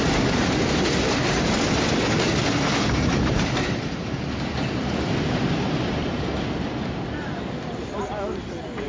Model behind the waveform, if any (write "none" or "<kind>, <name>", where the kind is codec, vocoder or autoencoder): none